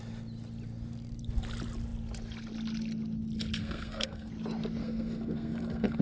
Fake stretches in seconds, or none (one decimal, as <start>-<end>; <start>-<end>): 3.6-4.3; 4.8-6.0